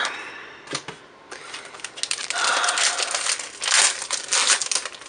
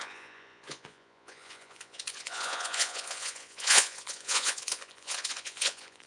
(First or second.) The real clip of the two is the first